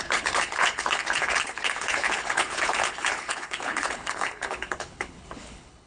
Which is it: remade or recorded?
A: remade